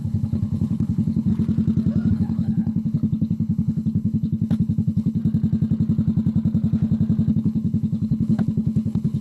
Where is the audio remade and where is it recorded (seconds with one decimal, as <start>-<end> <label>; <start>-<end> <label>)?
0.0-1.3 remade; 1.3-2.1 recorded; 2.1-5.2 remade; 5.2-7.3 recorded; 7.3-9.2 remade